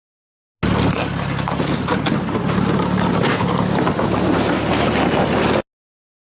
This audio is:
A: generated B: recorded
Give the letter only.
B